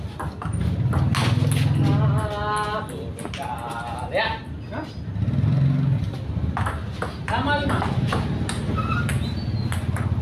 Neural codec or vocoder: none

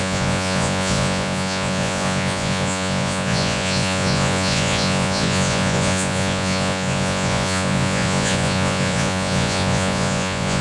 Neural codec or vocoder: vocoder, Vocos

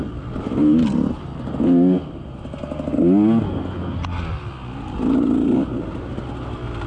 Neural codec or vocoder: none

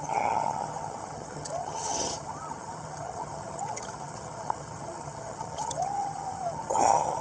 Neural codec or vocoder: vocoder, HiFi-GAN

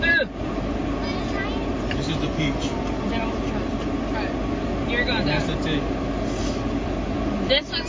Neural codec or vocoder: none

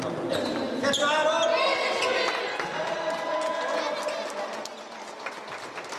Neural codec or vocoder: none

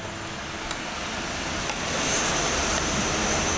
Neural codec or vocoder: none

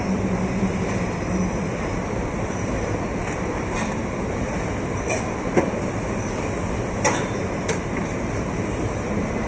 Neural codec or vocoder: vocoder, BigVGAN v2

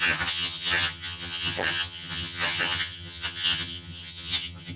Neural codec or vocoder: vocoder, HiFi-GAN